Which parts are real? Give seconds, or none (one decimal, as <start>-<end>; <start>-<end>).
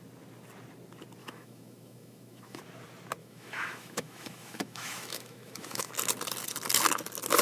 0.0-1.2; 2.6-3.2; 5.9-7.4